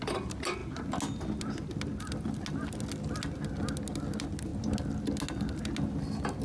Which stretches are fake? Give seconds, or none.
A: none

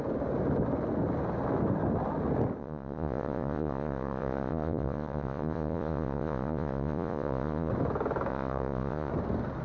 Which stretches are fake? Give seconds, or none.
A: 2.6-7.7 (vocoder, Vocos); 8.3-9.1

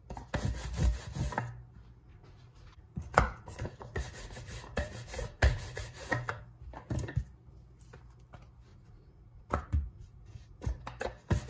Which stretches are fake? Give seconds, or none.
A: 2.1-6.4 (vocoder, Vocos); 8.7-10.8

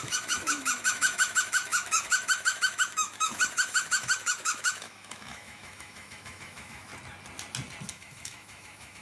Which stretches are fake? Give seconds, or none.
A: 0.0-6.9 (autoencoder, DAC-VAE); 7.9-9.0

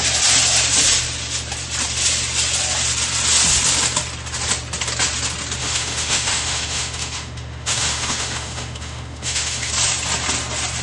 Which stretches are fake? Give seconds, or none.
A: 5.6-9.7 (autoencoder, DAC-VAE)

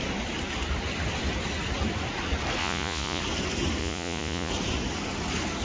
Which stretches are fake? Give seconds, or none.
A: 2.6-3.2 (vocoder, Vocos); 3.8-4.5